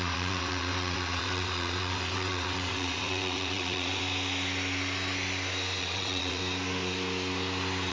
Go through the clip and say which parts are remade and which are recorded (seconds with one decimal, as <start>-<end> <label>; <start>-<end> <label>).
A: 0.0-4.0 remade; 4.0-5.8 recorded; 5.8-6.4 remade; 6.4-7.9 recorded